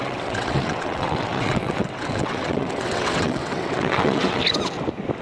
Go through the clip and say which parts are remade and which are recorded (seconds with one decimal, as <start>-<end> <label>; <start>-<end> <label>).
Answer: 0.0-4.4 remade; 4.4-5.2 recorded